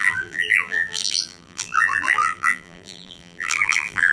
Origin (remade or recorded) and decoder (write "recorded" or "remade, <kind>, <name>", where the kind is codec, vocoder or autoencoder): remade, vocoder, BigVGAN v2